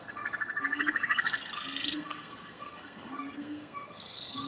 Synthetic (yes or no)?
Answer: yes